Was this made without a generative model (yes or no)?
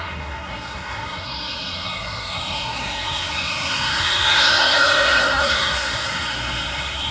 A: no